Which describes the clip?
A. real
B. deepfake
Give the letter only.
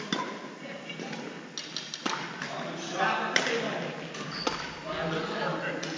A